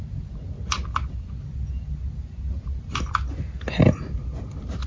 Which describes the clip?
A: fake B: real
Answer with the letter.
B